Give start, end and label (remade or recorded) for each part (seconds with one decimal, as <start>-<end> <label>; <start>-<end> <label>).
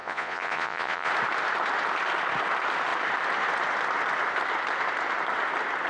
0.0-1.1 remade; 1.1-5.9 recorded